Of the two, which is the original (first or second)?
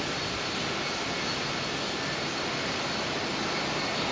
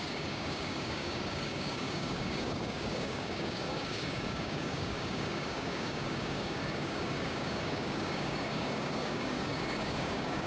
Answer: first